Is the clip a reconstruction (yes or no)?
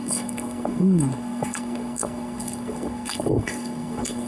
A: yes